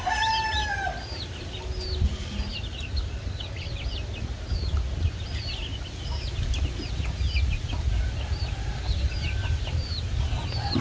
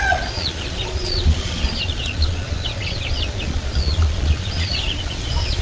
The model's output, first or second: second